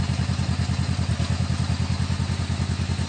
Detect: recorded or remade recorded